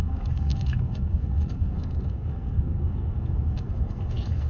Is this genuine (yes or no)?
no